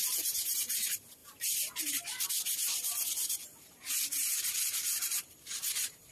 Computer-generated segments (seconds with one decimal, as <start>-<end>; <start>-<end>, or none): 0.0-3.1; 3.7-6.1